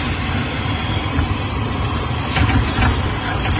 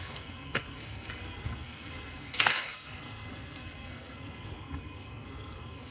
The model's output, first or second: second